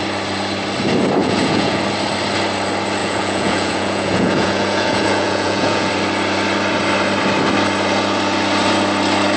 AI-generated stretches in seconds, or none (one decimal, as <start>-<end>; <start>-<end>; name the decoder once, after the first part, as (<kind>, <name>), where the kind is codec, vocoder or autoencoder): 1.2-1.8 (vocoder, Vocos); 3.0-5.9